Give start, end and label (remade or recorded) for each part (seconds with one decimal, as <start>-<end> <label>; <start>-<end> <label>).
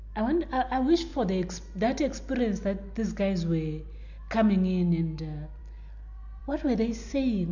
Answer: 0.0-7.5 recorded